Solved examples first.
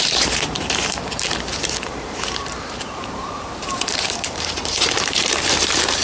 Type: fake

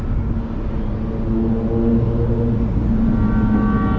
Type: real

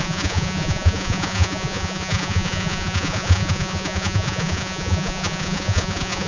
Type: fake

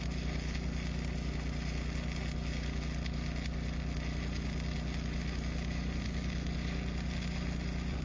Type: real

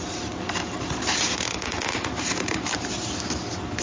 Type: real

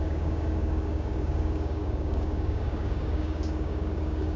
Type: fake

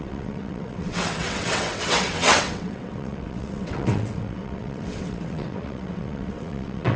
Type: fake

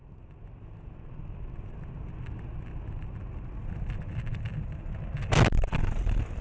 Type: real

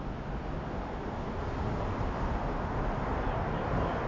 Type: real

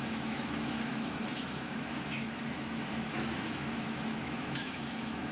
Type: fake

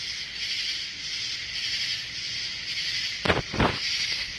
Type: fake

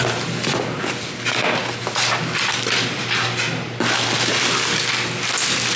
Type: real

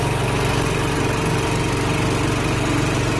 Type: real